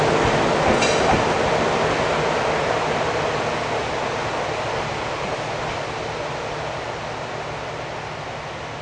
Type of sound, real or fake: real